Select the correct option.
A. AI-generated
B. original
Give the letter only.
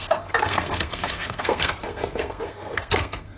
A